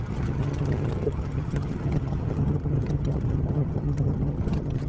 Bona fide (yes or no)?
no